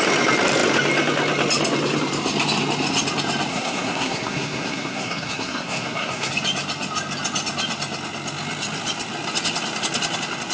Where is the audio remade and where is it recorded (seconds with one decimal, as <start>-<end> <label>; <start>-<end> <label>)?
0.0-3.5 recorded; 3.5-6.3 remade; 6.3-10.5 recorded